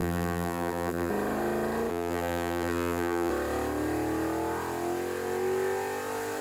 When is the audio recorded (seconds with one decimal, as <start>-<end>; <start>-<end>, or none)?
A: 1.1-1.9; 3.3-6.4